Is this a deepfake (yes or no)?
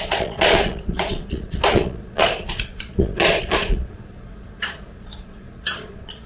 yes